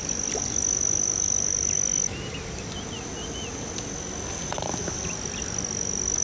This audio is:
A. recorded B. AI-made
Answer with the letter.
A